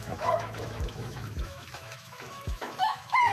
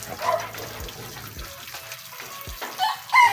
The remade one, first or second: first